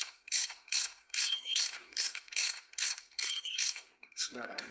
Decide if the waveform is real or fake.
fake